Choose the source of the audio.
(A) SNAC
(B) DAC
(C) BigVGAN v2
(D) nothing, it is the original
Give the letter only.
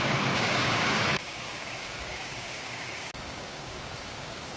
B